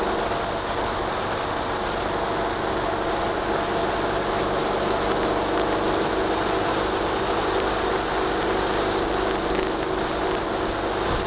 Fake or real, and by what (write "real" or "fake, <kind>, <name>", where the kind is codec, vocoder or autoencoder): real